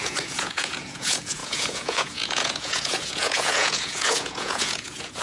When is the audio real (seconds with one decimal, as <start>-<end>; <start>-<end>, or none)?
none